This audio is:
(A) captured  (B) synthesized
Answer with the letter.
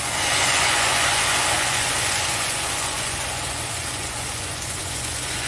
B